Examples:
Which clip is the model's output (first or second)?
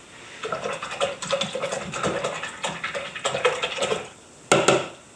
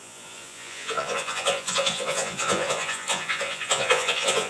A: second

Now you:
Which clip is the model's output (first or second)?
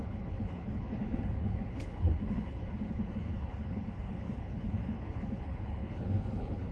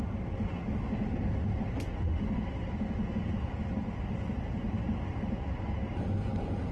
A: first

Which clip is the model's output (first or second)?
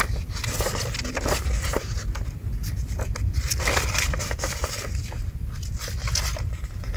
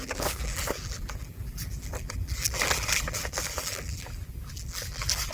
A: second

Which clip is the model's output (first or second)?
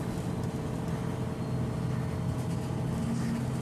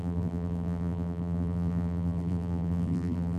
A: second